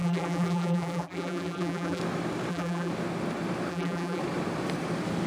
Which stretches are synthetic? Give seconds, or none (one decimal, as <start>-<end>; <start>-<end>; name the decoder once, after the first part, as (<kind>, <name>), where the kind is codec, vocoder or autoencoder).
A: 0.0-2.0 (vocoder, BigVGAN v2); 2.5-2.9; 3.7-4.2

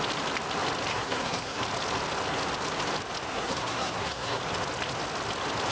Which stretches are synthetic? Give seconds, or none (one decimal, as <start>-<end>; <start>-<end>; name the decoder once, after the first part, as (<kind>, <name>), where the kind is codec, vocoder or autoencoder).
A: 0.9-1.6 (codec, SNAC); 3.3-4.4

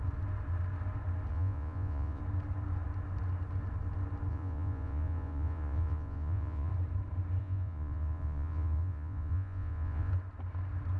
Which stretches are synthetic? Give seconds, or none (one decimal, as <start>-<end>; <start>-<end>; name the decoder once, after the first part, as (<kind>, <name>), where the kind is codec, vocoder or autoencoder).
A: 1.3-2.2 (vocoder, Vocos); 4.3-6.7; 7.4-10.1

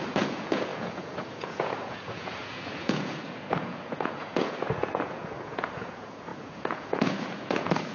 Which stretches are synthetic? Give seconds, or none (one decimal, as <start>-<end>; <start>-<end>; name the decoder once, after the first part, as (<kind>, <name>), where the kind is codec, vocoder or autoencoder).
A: 0.0-7.9 (vocoder, Vocos)

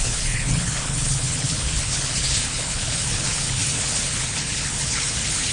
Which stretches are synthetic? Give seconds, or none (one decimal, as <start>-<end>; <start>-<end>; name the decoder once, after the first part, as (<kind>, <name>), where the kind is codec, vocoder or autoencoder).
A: 0.0-5.5 (codec, HILCodec)

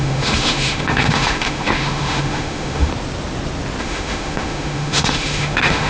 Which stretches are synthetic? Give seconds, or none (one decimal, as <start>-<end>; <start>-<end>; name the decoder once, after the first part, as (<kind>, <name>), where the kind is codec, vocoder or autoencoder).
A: 0.0-2.9 (autoencoder, DAC-VAE); 3.8-5.9

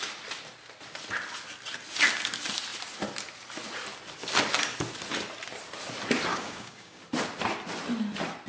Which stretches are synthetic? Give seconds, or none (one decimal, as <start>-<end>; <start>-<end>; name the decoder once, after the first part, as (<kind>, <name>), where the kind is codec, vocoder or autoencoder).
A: 6.3-7.0 (codec, DAC)